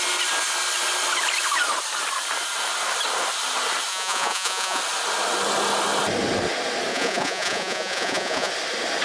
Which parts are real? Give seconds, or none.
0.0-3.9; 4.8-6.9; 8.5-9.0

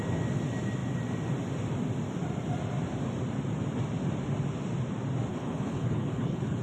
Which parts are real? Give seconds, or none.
0.0-5.3